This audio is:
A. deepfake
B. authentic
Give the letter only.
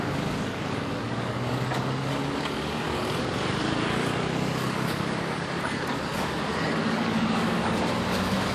A